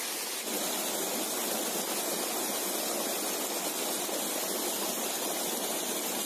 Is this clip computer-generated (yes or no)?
no